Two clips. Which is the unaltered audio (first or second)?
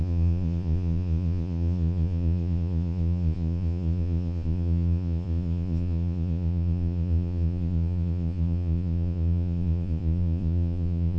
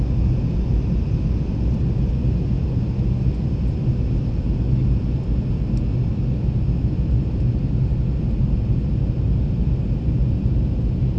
second